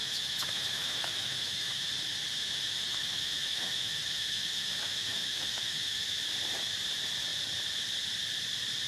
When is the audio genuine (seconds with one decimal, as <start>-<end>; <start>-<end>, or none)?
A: 1.9-2.3; 6.2-8.9